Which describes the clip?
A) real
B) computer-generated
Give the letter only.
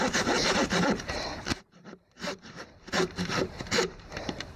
B